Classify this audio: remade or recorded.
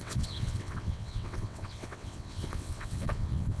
remade